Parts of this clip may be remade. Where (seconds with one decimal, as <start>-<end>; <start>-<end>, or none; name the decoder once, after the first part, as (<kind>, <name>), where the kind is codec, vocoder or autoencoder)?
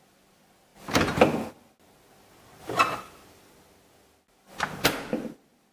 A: none